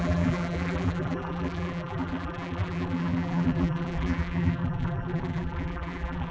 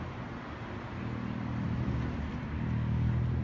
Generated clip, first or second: first